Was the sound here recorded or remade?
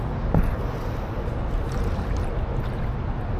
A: recorded